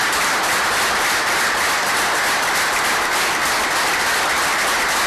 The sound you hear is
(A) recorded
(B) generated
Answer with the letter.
B